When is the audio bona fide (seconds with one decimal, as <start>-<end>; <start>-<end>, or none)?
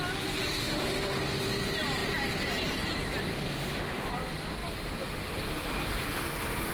0.0-0.6; 1.2-3.3; 4.1-6.7